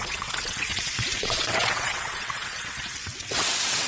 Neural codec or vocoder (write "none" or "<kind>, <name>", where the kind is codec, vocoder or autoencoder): vocoder, WaveNeXt